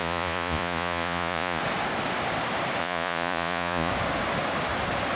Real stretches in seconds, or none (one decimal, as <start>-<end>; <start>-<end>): 1.6-2.8; 3.9-5.2